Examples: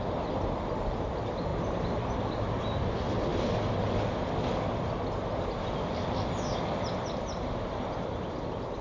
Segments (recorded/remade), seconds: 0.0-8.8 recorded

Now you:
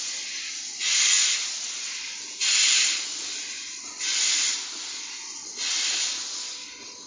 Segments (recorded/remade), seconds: 0.0-7.1 recorded

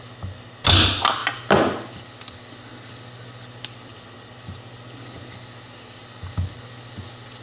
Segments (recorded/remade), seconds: 0.0-7.4 recorded

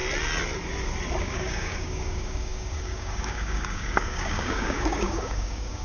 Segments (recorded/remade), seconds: 0.0-1.2 recorded; 1.2-5.8 remade

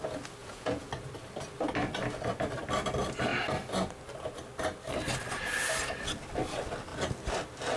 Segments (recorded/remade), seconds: 0.0-0.4 recorded; 0.4-0.9 remade; 0.9-7.8 recorded